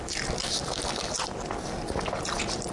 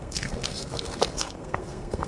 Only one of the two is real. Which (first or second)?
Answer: first